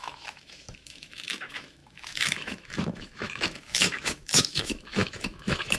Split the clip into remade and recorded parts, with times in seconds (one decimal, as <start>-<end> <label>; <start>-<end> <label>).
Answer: 0.0-5.8 remade